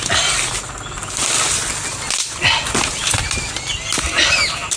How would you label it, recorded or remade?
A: recorded